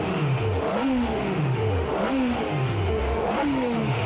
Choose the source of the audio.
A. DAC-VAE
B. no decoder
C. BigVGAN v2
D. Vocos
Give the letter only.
A